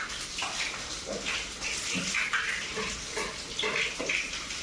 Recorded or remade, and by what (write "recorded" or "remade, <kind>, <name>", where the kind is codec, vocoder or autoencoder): recorded